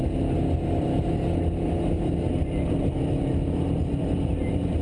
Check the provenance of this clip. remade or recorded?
recorded